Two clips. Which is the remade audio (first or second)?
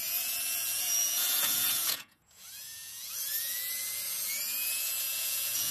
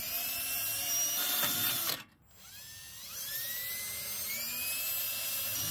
first